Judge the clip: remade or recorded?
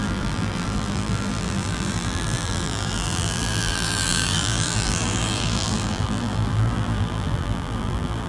remade